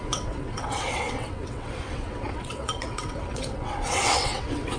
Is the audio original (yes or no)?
no